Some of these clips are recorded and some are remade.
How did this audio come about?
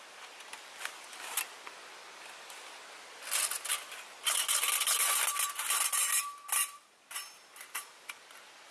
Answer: recorded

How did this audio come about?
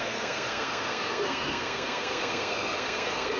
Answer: remade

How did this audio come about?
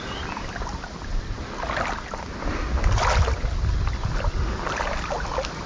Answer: recorded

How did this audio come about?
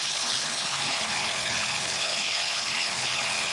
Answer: remade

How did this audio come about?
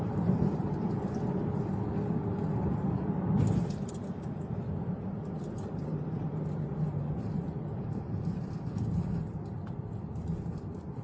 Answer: remade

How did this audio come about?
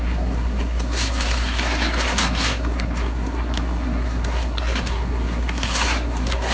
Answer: remade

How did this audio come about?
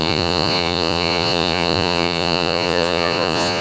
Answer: remade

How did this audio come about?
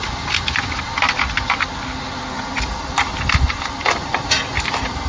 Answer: remade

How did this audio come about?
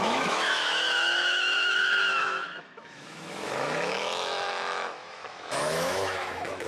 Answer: remade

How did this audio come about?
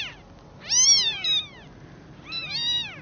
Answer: recorded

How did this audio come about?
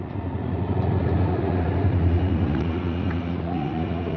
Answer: remade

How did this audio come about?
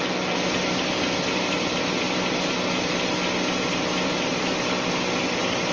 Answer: recorded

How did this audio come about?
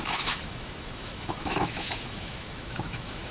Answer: remade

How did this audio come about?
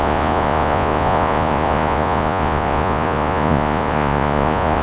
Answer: remade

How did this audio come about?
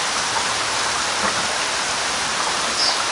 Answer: recorded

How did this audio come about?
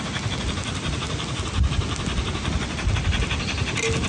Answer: recorded